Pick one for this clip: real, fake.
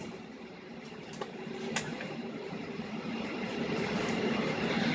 fake